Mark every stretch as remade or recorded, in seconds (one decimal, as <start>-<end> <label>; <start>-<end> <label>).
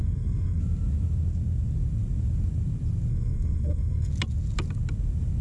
0.0-0.6 remade; 0.6-3.1 recorded; 3.1-4.1 remade; 4.1-5.4 recorded